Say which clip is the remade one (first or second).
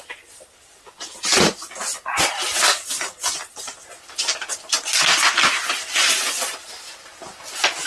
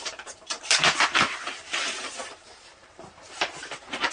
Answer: second